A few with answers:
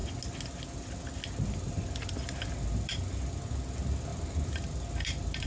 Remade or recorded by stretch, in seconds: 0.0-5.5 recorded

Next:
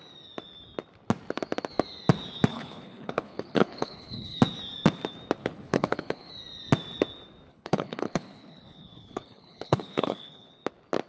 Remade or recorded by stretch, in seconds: 0.0-2.5 recorded; 2.5-4.4 remade; 4.4-5.4 recorded; 5.4-6.3 remade; 6.3-7.5 recorded; 7.5-10.6 remade; 10.6-11.1 recorded

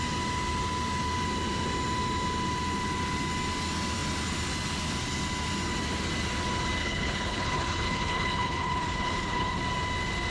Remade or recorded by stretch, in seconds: 0.0-6.8 recorded; 6.8-9.6 remade; 9.6-10.3 recorded

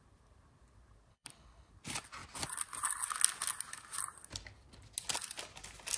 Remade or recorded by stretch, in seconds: 0.0-1.1 recorded; 1.1-1.7 remade; 1.7-6.0 recorded

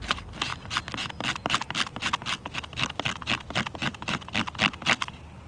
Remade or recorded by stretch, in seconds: 0.0-5.5 recorded

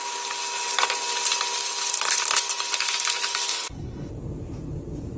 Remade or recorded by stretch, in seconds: 0.0-3.5 recorded; 3.5-4.1 remade; 4.1-5.2 recorded